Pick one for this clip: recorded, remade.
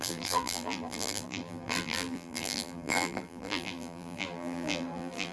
remade